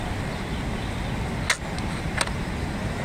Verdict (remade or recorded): recorded